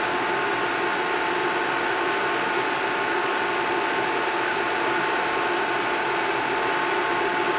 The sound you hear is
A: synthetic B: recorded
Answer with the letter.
B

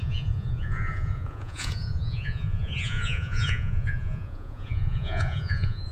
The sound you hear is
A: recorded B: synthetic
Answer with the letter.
B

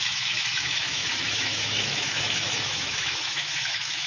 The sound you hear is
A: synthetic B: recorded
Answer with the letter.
A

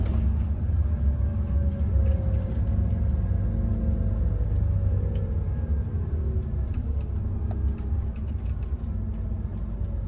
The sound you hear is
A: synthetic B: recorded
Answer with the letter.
B